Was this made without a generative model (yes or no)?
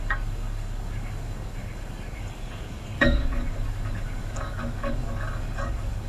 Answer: no